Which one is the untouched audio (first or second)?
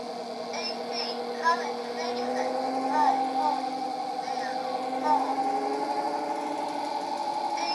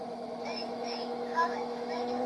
first